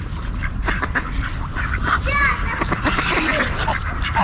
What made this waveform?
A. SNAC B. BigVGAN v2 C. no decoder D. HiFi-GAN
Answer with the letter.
B